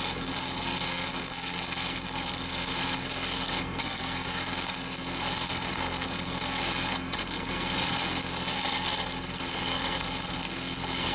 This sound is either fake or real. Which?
fake